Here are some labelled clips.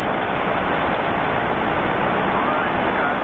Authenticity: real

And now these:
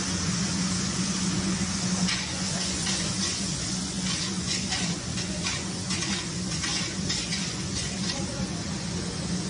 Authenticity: fake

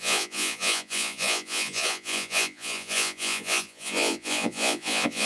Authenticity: fake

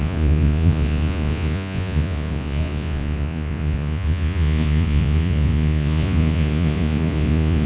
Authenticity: fake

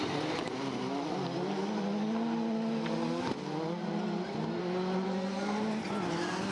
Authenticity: real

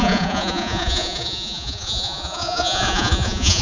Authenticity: fake